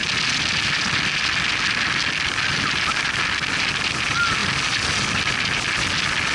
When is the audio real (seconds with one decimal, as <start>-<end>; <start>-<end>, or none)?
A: 0.0-6.3